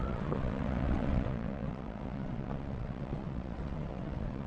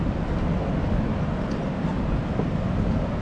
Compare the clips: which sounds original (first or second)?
second